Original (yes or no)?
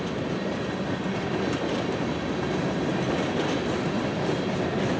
yes